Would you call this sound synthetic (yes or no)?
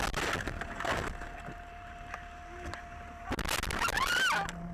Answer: no